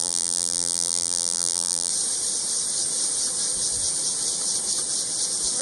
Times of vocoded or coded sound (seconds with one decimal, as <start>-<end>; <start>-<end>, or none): 0.0-1.9